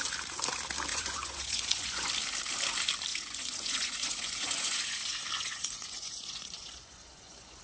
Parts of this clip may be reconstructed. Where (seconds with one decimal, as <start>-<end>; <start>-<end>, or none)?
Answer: 0.9-2.1; 3.1-7.6